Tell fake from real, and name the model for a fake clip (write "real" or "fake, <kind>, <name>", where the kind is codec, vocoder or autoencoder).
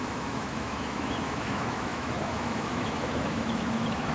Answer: fake, autoencoder, DAC-VAE